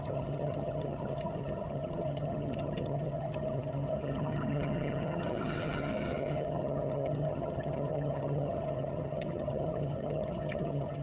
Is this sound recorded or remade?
remade